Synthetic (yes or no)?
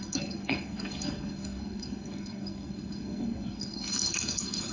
yes